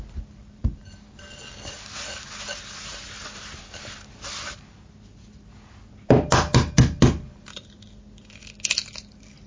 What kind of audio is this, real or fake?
real